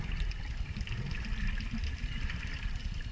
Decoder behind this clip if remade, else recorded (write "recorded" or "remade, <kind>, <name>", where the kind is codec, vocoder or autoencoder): recorded